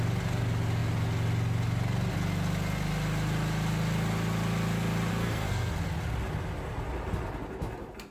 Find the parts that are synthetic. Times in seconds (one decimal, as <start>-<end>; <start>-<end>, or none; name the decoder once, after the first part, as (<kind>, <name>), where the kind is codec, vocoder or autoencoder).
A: 5.1-5.7 (codec, SNAC)